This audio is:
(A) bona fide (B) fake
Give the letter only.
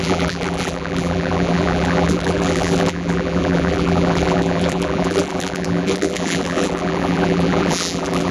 B